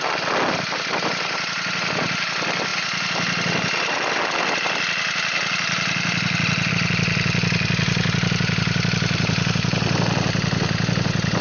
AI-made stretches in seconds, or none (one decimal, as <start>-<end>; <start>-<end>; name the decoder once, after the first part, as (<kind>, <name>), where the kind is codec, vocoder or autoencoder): none